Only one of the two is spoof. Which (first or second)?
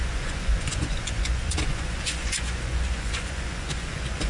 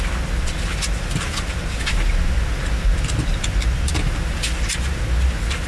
first